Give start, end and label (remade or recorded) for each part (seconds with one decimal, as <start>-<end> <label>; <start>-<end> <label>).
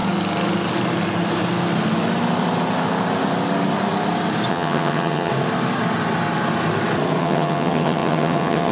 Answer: 0.0-4.5 recorded; 4.5-5.3 remade; 5.3-7.2 recorded; 7.2-8.7 remade